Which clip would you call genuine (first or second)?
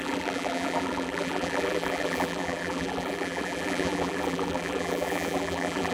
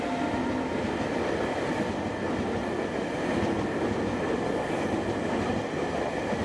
second